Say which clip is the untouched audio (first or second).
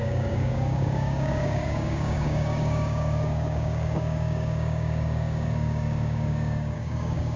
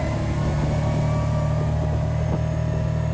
second